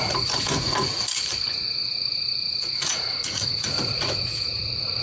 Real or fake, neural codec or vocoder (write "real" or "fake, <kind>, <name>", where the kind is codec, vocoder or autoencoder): fake, vocoder, Vocos